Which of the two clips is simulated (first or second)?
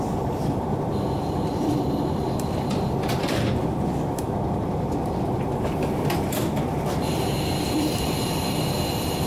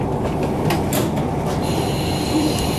first